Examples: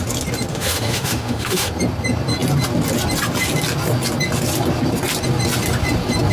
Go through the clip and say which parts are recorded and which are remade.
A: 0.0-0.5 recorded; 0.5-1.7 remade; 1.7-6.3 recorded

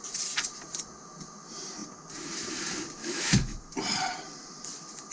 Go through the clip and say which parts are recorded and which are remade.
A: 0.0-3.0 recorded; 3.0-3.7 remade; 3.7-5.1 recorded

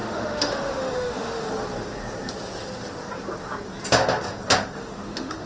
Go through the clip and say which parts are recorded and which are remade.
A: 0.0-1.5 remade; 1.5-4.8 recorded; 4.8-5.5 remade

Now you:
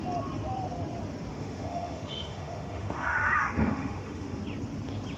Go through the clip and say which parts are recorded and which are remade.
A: 0.0-1.3 recorded; 1.3-4.4 remade; 4.4-5.2 recorded

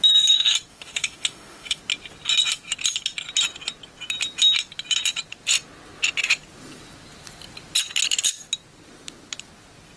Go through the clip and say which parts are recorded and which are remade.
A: 0.0-0.7 recorded; 0.7-1.8 remade; 1.8-10.0 recorded